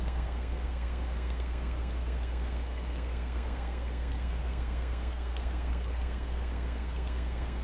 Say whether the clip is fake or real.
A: fake